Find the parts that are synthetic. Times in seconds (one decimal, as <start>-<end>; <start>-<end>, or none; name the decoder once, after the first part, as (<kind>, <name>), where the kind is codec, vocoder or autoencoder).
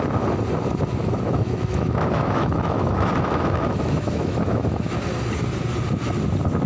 1.0-5.0 (autoencoder, DAC-VAE)